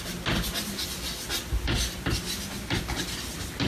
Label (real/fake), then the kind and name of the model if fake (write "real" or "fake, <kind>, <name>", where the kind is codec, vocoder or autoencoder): real